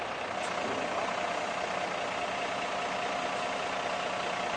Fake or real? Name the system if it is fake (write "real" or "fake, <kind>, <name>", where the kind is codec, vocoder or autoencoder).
real